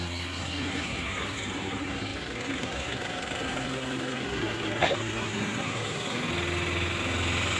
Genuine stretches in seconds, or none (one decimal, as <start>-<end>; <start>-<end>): 6.2-7.6